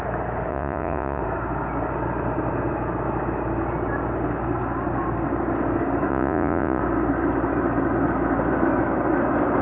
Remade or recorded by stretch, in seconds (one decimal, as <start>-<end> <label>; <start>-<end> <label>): 0.0-0.5 recorded; 0.5-1.2 remade; 1.2-6.1 recorded; 6.1-6.8 remade; 6.8-9.6 recorded